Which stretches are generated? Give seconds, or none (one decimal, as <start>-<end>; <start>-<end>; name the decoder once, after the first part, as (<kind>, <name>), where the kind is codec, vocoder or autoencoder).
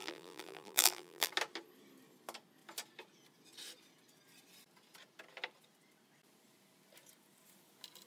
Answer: 0.0-1.3 (vocoder, BigVGAN v2)